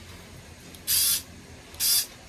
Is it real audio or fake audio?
real